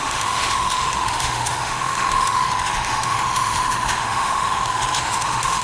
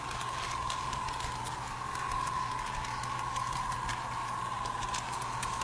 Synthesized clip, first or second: first